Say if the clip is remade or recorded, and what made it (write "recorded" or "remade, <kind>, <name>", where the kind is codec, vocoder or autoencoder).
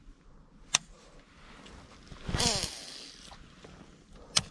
recorded